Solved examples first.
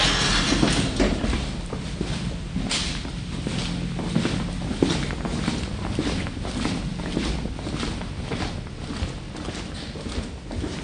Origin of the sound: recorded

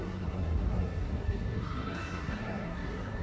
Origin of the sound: remade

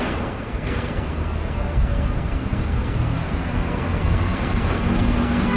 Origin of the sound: remade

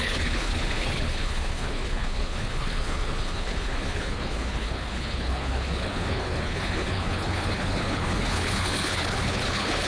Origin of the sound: remade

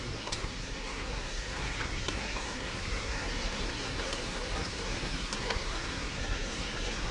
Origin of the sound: remade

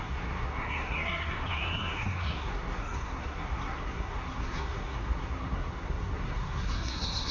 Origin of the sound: remade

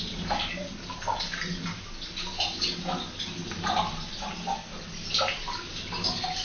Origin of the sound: recorded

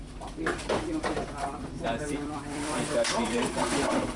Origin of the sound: remade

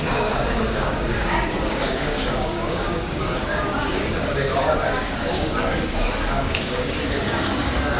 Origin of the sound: remade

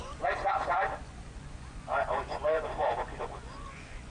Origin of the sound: remade